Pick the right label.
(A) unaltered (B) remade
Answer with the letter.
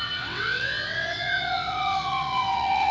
B